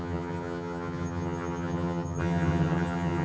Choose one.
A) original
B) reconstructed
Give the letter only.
B